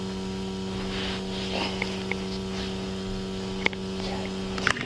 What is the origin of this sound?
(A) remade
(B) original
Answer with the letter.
B